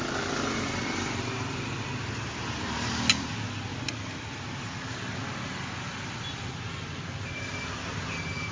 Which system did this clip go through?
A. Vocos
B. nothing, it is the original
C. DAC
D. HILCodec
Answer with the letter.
B